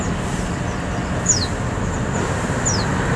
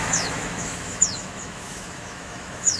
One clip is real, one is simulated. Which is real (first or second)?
first